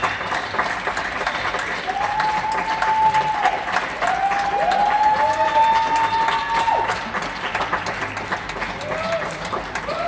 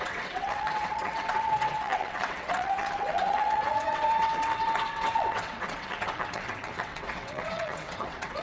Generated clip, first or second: second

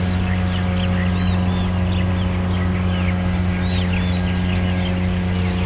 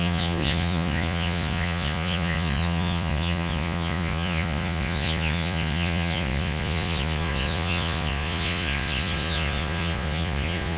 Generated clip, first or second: second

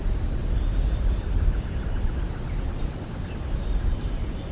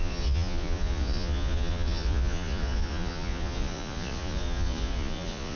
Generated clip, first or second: second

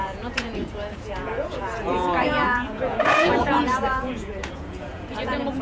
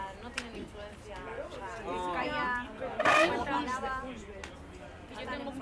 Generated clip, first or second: first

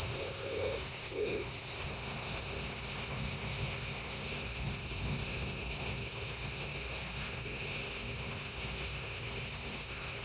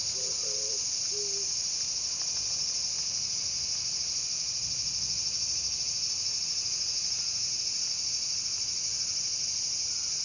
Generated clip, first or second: first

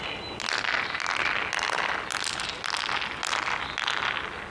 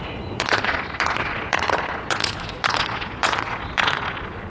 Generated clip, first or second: second